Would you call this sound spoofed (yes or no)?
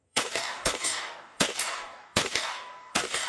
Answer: yes